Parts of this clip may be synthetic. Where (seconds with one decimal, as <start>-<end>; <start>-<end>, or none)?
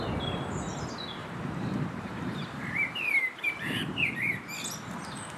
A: 1.2-4.4